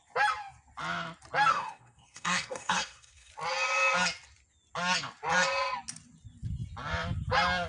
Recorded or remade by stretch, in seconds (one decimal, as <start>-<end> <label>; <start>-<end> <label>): 0.0-1.5 recorded; 1.5-3.3 remade; 3.3-7.7 recorded